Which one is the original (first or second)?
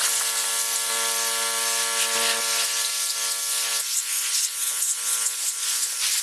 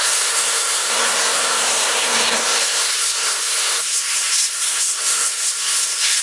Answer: first